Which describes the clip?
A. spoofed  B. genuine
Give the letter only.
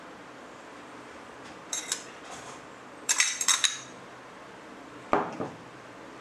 A